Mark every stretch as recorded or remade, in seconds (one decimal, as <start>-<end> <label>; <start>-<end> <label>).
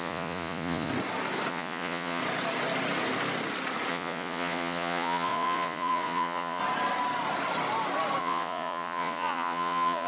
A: 0.0-0.9 remade; 0.9-1.5 recorded; 1.5-2.2 remade; 2.2-3.9 recorded; 3.9-6.6 remade; 6.6-8.2 recorded; 8.2-10.1 remade